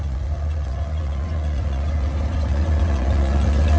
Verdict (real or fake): fake